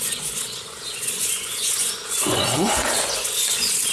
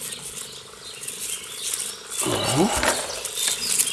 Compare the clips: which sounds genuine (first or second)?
second